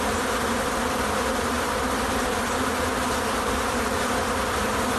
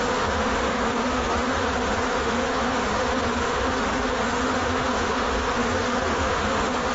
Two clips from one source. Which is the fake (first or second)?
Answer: second